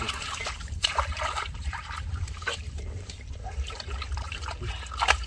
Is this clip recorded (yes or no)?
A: no